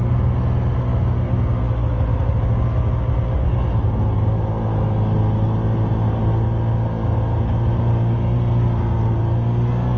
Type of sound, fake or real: real